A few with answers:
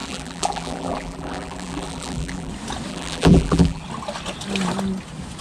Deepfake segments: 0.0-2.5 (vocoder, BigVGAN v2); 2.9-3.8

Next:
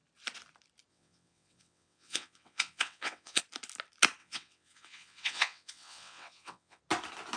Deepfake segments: 0.9-3.4 (vocoder, WaveNeXt); 4.2-6.8

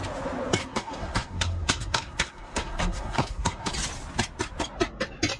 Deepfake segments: 0.6-3.7 (codec, SNAC)

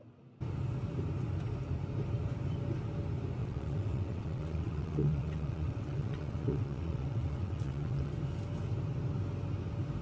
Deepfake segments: 3.4-8.1 (vocoder, WaveNeXt)

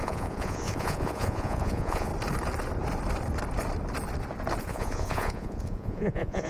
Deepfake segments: 0.0-2.1 (vocoder, Vocos); 4.6-6.5

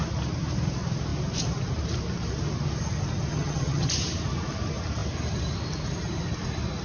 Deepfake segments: 3.3-3.9 (vocoder, HiFi-GAN)